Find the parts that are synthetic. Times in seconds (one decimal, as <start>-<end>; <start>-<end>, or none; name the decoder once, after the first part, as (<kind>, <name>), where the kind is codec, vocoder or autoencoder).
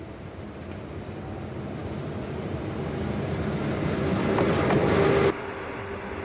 none